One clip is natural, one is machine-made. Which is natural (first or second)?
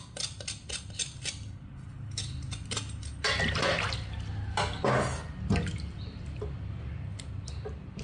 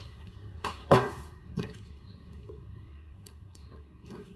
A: first